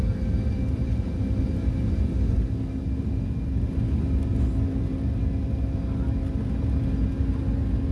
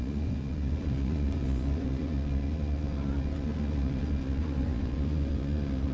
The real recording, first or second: first